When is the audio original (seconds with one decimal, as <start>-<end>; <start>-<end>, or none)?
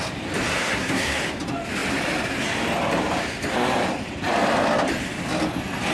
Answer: 0.0-0.5; 1.2-5.9